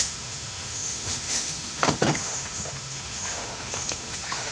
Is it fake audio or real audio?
fake